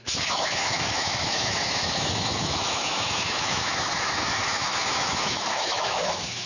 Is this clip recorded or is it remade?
remade